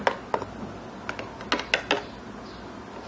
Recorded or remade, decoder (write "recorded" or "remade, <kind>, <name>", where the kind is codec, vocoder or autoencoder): recorded